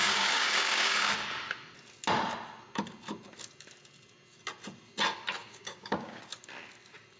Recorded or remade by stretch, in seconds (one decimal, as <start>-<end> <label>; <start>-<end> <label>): 0.0-1.1 remade; 1.1-5.4 recorded; 5.4-6.2 remade; 6.2-7.2 recorded